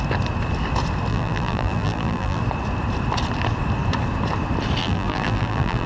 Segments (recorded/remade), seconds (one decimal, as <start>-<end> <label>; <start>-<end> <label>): 0.0-1.1 recorded; 1.1-2.4 remade; 2.4-4.8 recorded; 4.8-5.9 remade